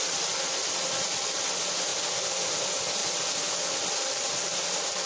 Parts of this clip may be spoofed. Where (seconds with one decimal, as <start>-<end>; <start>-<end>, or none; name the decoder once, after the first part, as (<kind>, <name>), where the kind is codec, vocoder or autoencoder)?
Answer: none